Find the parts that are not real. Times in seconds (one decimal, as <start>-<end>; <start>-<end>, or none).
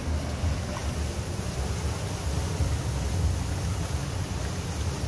none